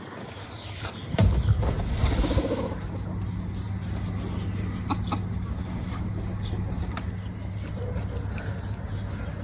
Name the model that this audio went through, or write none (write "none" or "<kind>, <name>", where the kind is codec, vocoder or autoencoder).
none